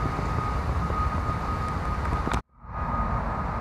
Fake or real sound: real